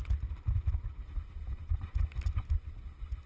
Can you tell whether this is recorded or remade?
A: recorded